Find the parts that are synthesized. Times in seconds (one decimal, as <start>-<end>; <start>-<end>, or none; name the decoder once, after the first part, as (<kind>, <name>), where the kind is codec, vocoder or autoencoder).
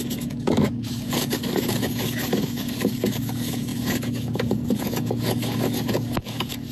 0.0-6.7 (codec, DAC)